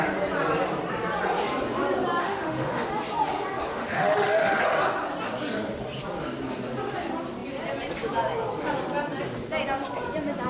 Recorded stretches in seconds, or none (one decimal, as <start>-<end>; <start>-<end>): 0.0-2.2; 2.9-3.7; 4.6-10.5